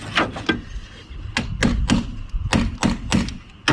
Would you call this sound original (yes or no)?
yes